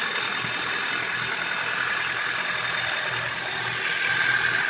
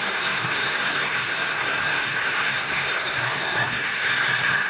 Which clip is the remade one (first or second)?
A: second